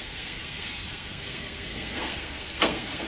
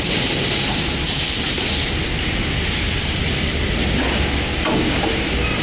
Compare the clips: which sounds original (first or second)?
second